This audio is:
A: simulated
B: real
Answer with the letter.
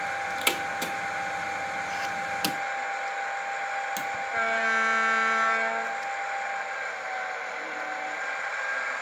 B